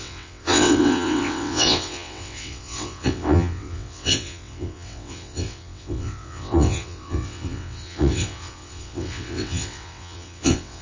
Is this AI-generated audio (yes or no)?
yes